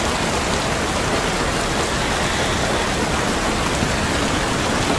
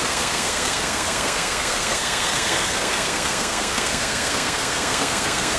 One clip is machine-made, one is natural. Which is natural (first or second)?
first